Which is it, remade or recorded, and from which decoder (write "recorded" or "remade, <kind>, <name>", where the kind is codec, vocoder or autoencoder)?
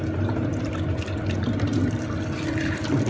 recorded